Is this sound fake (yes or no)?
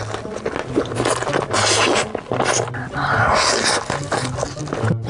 no